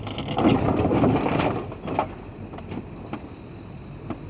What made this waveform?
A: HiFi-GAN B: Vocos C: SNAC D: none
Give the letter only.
D